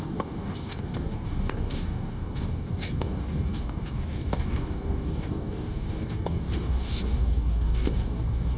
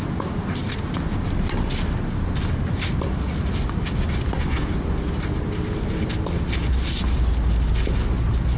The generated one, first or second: first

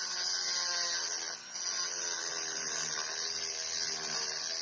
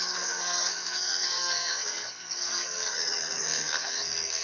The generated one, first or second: second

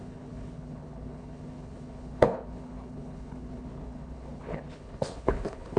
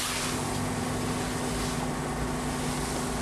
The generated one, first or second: first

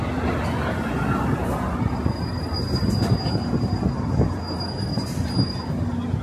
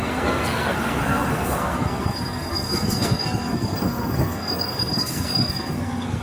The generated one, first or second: second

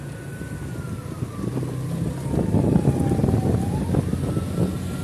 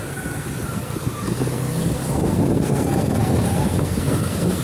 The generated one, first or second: second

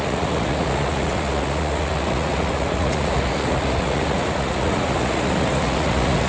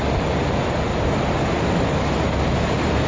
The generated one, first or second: first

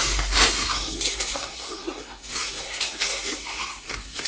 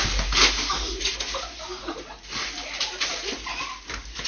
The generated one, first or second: first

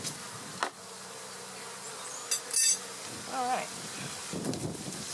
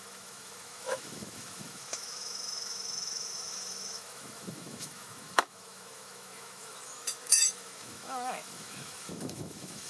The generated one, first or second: second